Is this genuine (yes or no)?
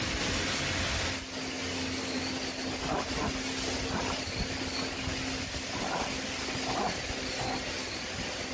yes